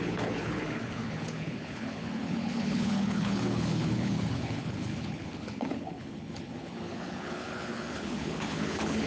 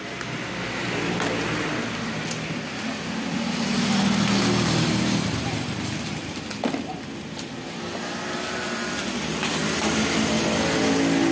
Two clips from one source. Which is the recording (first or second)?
second